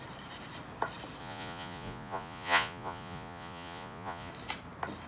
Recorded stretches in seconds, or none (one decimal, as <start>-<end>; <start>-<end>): 0.0-1.2; 4.3-5.1

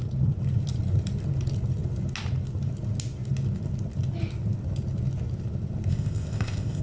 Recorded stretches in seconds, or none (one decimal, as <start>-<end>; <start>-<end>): 0.0-5.9

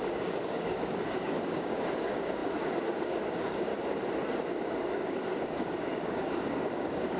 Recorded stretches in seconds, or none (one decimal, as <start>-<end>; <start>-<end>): 3.7-4.5